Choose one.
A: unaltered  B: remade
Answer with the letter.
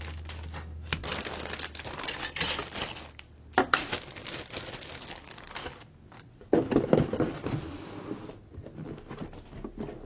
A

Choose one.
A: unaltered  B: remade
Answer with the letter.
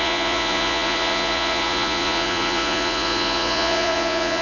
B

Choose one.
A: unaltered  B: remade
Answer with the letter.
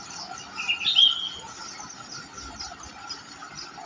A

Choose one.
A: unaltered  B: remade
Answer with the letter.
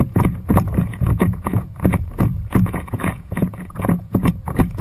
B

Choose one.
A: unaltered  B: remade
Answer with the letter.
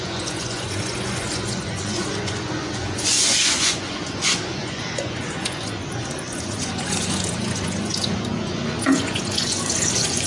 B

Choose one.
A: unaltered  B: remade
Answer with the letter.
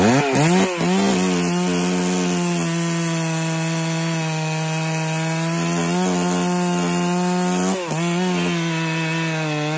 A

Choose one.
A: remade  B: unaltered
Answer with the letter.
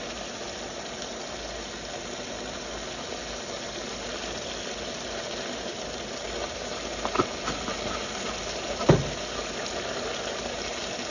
B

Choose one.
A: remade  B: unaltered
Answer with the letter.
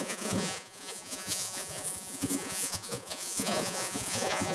A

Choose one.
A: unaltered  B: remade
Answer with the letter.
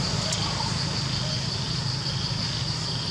A